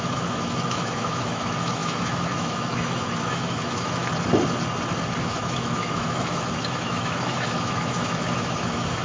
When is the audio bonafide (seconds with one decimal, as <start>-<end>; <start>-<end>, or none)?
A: 4.0-5.2